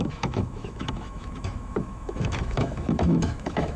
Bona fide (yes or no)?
no